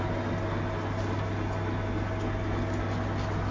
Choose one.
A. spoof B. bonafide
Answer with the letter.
B